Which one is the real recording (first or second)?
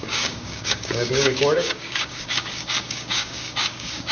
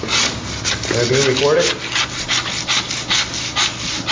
second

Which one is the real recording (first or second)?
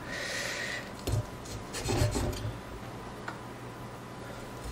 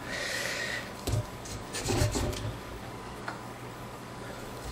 first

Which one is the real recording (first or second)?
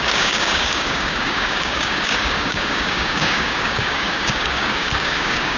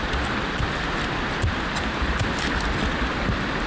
second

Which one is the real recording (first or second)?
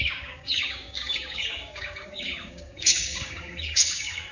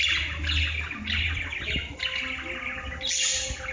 second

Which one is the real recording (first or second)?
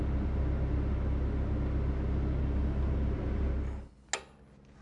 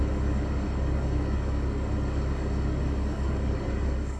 first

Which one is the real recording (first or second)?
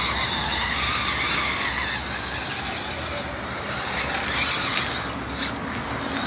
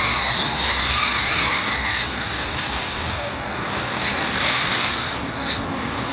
first